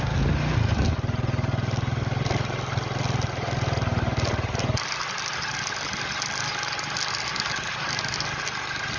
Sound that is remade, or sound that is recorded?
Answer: recorded